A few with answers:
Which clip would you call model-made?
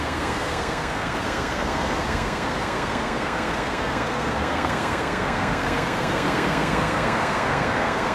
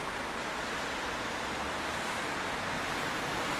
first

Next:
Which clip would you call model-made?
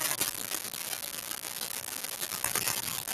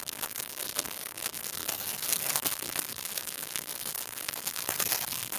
second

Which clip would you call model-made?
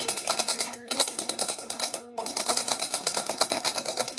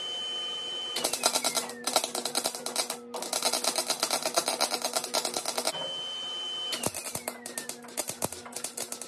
first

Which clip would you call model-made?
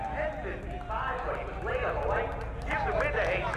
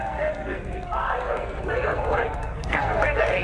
second